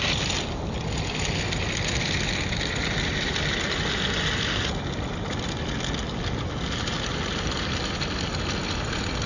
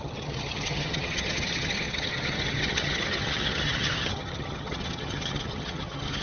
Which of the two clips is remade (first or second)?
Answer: second